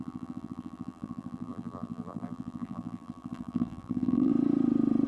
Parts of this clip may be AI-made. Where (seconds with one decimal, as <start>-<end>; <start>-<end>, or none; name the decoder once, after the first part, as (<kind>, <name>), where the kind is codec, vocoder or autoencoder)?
0.0-4.3 (vocoder, BigVGAN v2)